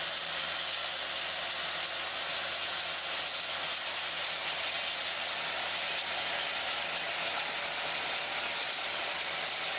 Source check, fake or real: real